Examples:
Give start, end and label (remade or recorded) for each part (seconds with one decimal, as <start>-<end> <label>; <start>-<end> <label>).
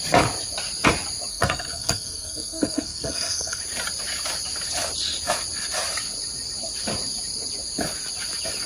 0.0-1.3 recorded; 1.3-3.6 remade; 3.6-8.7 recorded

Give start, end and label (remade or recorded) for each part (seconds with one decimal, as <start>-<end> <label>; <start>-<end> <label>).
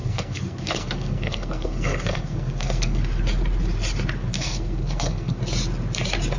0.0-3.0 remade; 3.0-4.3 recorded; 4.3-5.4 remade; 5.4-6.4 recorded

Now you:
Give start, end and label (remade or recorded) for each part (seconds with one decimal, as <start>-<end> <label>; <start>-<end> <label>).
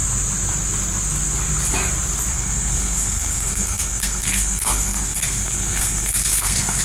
0.0-2.3 recorded; 2.3-6.8 remade